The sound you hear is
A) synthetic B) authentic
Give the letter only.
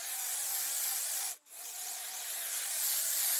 B